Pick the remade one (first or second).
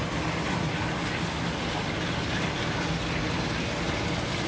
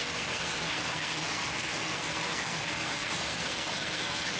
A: second